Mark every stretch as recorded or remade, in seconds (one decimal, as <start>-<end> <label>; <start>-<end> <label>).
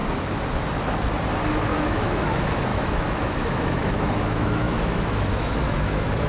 0.0-1.7 recorded; 1.7-2.3 remade; 2.3-2.7 recorded; 2.7-6.3 remade